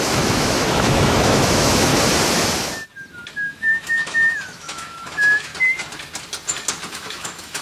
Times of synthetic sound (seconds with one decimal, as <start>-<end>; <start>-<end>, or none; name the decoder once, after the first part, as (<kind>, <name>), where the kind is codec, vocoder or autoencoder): 0.0-1.9 (autoencoder, DAC-VAE); 3.3-5.5; 6.9-7.6